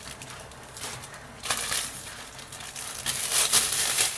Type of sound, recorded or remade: recorded